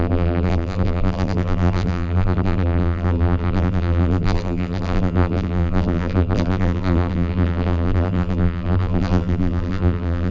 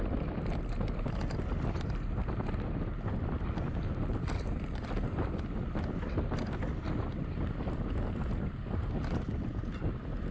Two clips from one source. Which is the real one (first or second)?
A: second